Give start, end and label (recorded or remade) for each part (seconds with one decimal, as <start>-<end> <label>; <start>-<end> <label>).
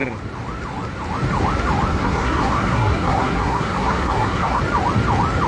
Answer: 0.0-1.9 recorded; 1.9-4.6 remade; 4.6-5.5 recorded